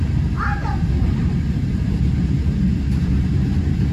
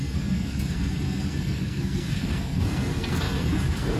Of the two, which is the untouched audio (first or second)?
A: first